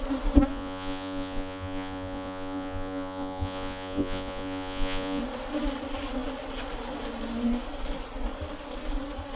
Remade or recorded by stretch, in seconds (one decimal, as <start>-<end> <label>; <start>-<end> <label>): 0.0-0.5 recorded; 0.5-5.2 remade; 5.2-9.4 recorded